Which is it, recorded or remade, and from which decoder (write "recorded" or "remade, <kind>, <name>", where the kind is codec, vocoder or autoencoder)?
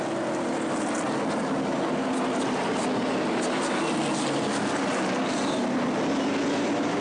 recorded